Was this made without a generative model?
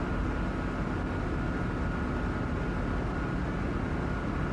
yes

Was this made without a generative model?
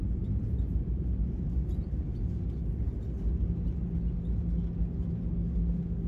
yes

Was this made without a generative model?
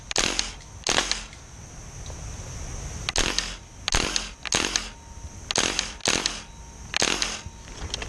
yes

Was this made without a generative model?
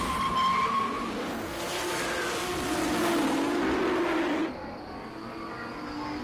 yes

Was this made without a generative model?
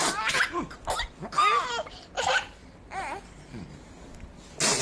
yes